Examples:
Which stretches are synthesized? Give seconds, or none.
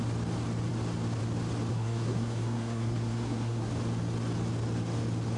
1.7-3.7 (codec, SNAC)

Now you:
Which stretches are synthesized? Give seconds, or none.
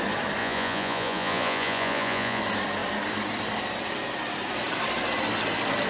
0.4-2.4 (vocoder, Vocos)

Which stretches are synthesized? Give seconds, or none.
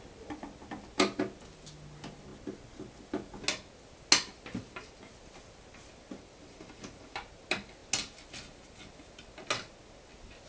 none